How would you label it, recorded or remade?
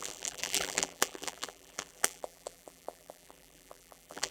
remade